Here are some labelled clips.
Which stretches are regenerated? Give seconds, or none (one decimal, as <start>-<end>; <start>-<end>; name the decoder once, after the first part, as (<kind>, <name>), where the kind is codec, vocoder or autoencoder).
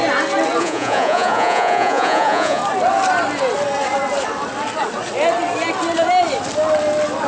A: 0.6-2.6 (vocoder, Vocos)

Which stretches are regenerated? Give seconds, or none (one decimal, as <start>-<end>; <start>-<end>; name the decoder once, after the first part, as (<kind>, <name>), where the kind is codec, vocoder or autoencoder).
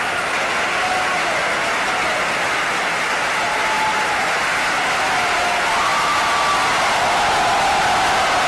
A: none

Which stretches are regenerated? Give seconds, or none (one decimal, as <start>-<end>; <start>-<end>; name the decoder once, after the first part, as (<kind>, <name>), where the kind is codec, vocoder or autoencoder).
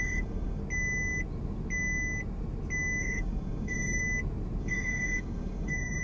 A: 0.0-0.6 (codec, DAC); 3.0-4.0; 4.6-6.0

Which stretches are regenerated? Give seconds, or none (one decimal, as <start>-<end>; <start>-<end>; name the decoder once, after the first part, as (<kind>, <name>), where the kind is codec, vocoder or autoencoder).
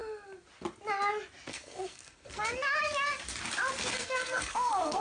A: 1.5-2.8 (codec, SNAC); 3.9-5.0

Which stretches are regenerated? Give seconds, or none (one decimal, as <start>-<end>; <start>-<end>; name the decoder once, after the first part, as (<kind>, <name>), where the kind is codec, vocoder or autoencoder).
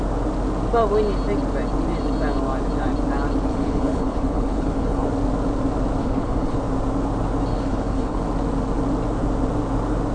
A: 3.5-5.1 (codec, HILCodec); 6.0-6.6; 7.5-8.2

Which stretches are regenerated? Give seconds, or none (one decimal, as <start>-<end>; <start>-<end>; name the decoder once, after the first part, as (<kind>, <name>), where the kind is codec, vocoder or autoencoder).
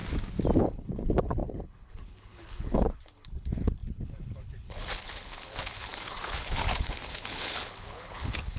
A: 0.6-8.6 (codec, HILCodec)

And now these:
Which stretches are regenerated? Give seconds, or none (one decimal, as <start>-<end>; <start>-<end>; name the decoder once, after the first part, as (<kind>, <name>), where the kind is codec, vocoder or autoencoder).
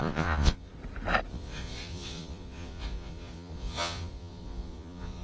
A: 0.0-0.7 (vocoder, Vocos); 1.3-5.2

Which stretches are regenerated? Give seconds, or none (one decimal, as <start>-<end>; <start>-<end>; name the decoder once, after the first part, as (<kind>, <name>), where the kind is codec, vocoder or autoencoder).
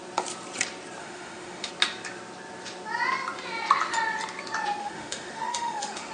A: 1.0-1.7 (autoencoder, DAC-VAE); 4.8-6.1